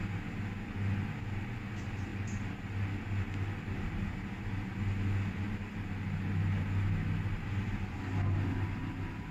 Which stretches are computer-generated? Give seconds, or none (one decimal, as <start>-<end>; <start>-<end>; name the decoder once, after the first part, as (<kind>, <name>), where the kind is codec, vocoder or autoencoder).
none